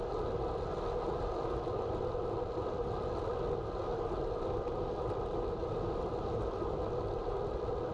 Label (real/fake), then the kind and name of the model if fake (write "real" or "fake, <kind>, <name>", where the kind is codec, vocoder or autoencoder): real